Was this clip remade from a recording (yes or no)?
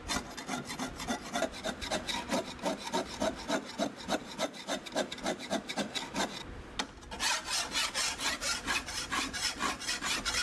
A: no